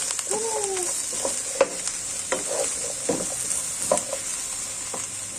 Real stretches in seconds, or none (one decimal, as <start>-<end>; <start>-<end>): 0.0-5.4

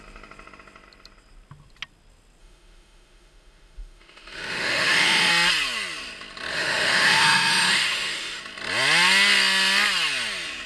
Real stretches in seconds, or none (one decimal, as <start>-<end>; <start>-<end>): 0.0-2.4; 5.3-6.5; 8.4-10.7